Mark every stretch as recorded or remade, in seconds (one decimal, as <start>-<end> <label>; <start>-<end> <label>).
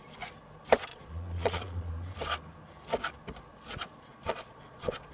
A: 0.0-0.9 recorded; 0.9-1.9 remade; 1.9-4.1 recorded; 4.1-5.1 remade